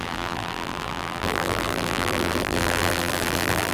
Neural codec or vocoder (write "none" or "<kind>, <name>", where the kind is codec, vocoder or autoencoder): vocoder, BigVGAN v2